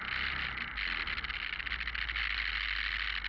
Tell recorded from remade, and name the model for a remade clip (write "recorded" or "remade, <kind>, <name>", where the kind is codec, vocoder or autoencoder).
recorded